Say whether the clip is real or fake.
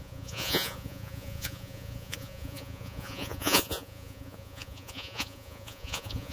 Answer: fake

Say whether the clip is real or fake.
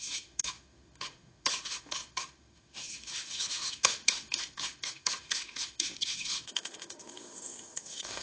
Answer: fake